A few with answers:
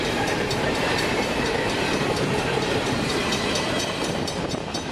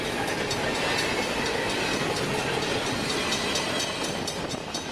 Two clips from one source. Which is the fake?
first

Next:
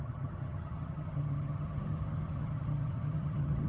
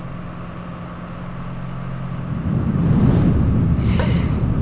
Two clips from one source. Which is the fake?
first